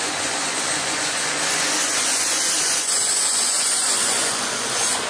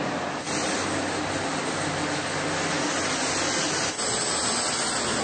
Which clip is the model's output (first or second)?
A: first